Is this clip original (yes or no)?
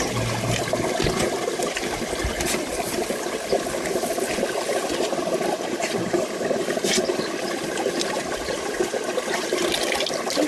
yes